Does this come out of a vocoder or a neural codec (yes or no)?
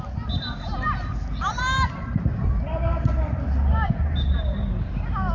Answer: no